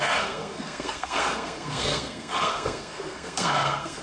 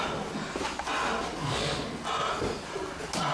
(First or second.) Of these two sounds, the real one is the second